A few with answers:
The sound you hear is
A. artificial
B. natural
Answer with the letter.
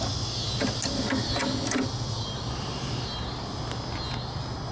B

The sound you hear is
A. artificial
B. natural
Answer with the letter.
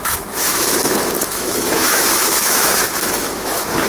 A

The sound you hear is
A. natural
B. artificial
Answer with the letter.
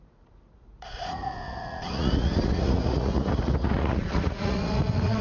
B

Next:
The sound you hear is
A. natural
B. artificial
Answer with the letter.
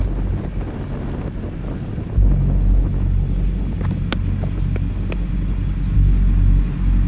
A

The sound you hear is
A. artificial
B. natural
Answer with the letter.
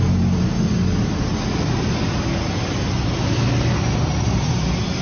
B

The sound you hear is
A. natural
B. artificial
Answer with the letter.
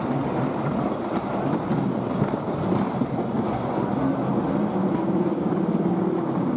A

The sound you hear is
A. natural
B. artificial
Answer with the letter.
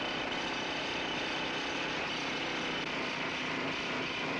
B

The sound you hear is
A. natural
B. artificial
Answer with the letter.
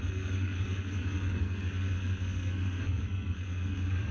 B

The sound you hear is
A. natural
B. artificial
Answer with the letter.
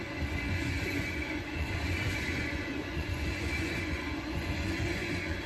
B